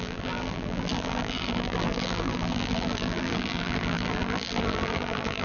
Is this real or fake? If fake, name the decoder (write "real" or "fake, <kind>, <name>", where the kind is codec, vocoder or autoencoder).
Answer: fake, vocoder, BigVGAN v2